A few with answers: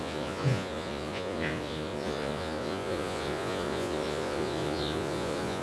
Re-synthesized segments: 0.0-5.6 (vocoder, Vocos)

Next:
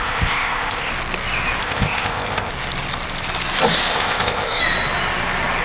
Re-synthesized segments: 0.0-0.9 (codec, ZipCodec); 1.6-2.5; 3.9-4.6

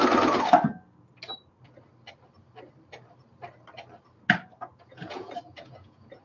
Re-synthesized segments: 4.7-6.2 (vocoder, Vocos)

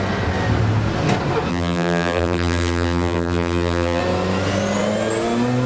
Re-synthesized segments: 1.5-4.0 (vocoder, BigVGAN v2)

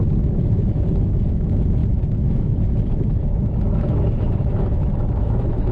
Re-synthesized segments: 0.0-5.7 (autoencoder, DAC-VAE)

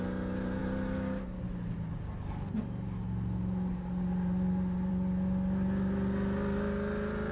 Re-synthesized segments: none

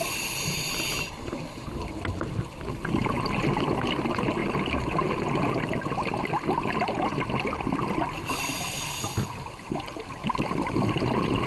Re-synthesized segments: none